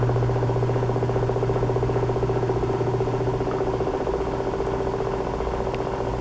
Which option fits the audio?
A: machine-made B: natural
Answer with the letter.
B